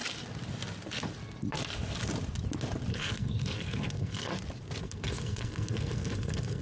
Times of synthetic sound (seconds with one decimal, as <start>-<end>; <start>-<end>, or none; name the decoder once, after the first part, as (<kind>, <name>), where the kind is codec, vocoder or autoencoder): 2.9-4.3 (codec, SNAC); 4.8-6.6